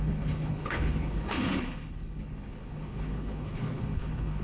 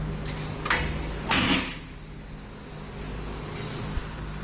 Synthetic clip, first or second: first